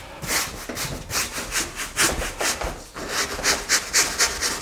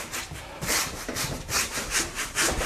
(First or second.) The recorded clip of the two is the first